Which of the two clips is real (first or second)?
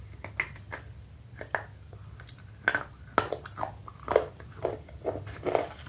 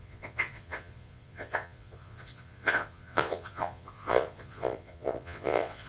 first